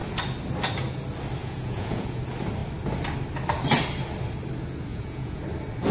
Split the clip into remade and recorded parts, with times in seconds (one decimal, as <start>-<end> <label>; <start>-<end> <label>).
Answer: 0.0-1.4 recorded; 1.4-2.2 remade; 2.2-4.9 recorded; 4.9-5.4 remade; 5.4-5.9 recorded